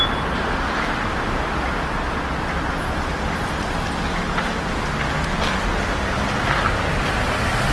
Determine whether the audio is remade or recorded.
recorded